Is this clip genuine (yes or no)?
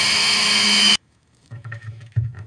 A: no